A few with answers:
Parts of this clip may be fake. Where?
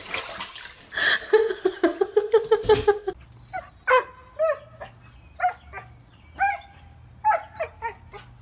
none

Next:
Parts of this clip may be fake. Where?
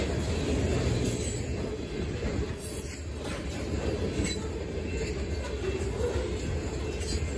none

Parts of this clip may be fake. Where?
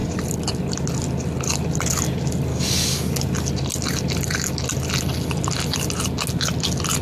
2.5-3.1 (codec, DAC)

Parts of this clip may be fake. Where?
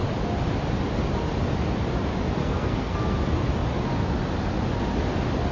2.4-3.2 (codec, SNAC)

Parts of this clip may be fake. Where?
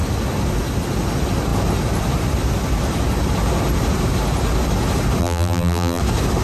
5.2-6.0 (vocoder, BigVGAN v2)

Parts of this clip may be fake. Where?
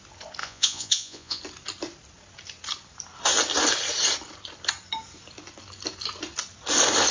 0.4-1.4 (vocoder, Vocos)